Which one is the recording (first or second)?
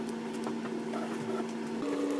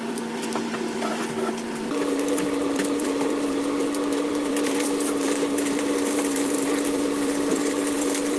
first